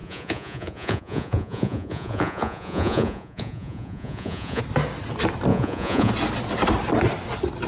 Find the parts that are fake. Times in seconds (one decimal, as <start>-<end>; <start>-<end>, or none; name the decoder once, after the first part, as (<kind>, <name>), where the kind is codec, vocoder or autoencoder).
0.0-4.6 (vocoder, Vocos); 5.5-6.1